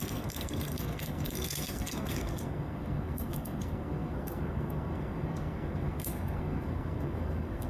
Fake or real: fake